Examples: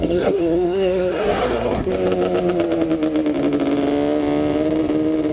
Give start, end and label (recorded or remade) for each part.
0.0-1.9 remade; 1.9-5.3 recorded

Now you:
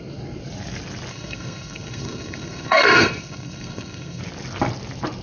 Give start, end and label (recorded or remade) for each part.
0.0-1.1 recorded; 1.1-4.2 remade; 4.2-5.2 recorded

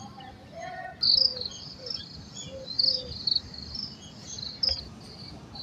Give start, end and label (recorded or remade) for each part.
0.0-5.6 recorded

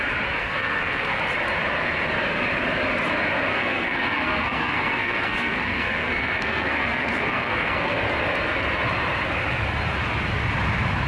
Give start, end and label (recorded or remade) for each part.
0.0-0.4 recorded; 0.4-1.2 remade; 1.2-3.5 recorded; 3.5-8.0 remade; 8.0-11.1 recorded

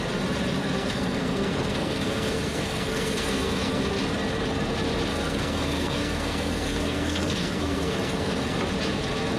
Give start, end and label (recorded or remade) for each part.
0.0-0.6 recorded; 0.6-3.9 remade; 3.9-5.1 recorded; 5.1-8.6 remade; 8.6-9.4 recorded

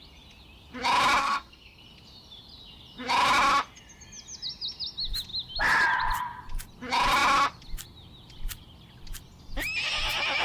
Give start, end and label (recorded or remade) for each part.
0.0-1.2 recorded; 1.2-1.8 remade; 1.8-10.4 recorded

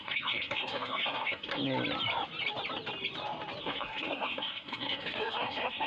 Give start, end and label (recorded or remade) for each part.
0.0-1.6 remade; 1.6-3.6 recorded; 3.6-5.9 remade